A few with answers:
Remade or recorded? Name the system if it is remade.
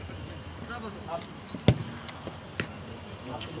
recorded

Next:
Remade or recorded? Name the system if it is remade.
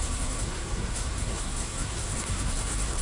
remade, codec, SNAC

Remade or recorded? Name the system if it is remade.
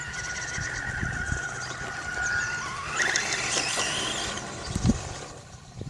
recorded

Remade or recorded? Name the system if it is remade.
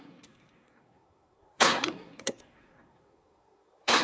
remade, codec, SNAC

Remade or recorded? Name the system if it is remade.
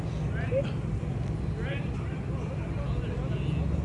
recorded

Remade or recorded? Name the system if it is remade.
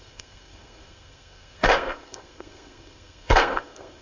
remade, codec, SNAC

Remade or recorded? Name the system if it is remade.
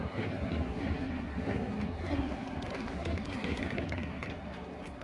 remade, codec, SNAC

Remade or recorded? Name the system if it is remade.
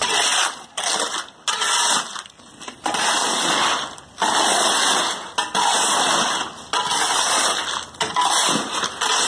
recorded